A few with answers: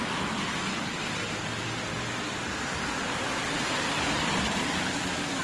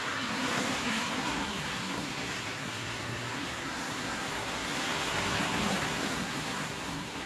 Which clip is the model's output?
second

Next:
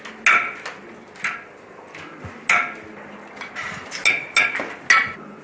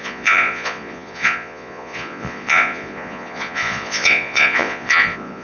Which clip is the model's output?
second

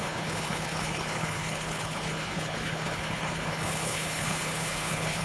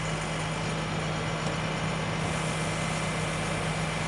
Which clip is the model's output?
first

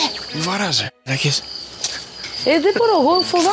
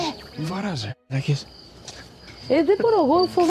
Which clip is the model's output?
second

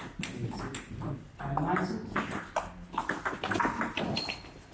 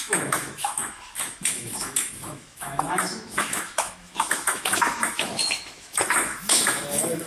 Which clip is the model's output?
second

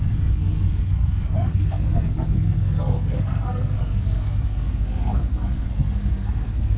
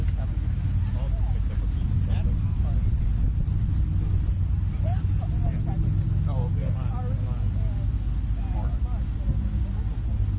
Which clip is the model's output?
first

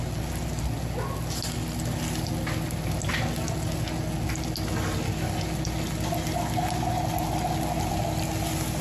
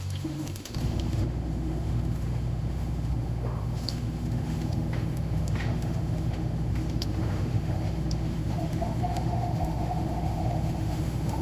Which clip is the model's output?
second